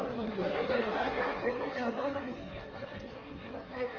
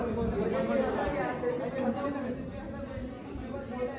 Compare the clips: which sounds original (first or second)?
second